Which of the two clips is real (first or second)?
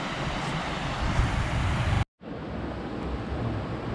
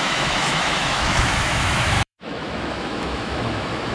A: first